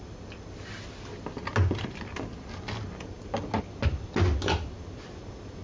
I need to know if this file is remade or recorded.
recorded